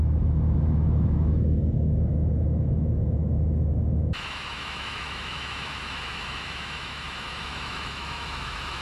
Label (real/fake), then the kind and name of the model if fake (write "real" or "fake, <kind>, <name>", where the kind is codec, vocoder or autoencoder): fake, autoencoder, DAC-VAE